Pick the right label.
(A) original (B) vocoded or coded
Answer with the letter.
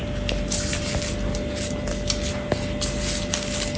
A